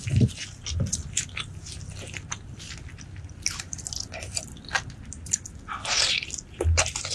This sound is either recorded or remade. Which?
recorded